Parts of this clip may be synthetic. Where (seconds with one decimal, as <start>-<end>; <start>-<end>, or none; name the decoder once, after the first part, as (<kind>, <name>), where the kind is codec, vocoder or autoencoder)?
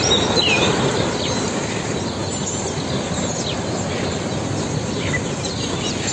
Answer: none